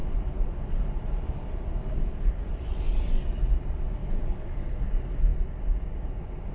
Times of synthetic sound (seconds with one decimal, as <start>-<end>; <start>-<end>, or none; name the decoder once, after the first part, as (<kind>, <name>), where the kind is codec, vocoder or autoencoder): 4.0-4.8 (codec, DAC)